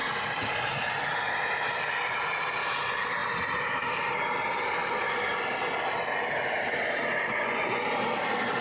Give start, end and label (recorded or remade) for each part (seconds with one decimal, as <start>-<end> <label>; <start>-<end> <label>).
0.0-7.3 recorded; 7.3-7.9 remade; 7.9-8.6 recorded